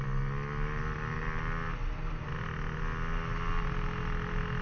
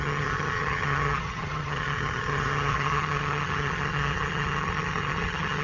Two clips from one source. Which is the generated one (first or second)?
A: second